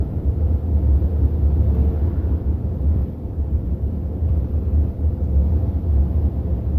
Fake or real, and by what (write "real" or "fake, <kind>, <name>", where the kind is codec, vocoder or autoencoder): real